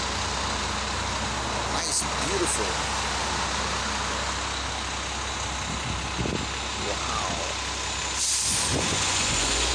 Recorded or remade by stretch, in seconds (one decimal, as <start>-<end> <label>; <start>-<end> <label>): 0.0-8.5 recorded; 8.5-9.7 remade